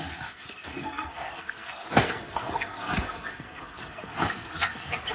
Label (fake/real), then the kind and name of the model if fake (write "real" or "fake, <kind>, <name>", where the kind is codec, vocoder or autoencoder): fake, codec, SNAC